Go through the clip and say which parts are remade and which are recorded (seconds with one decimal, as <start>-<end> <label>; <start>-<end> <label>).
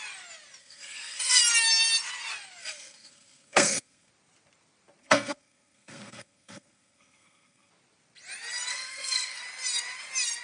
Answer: 0.0-0.6 recorded; 0.6-1.4 remade; 1.4-2.6 recorded; 2.6-4.1 remade; 4.1-5.0 recorded; 5.0-7.7 remade; 7.7-8.7 recorded; 8.7-9.4 remade; 9.4-10.4 recorded